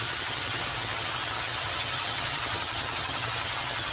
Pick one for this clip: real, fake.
fake